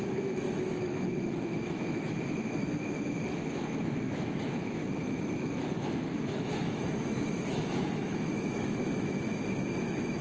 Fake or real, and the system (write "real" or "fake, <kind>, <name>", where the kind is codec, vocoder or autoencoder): fake, autoencoder, DAC-VAE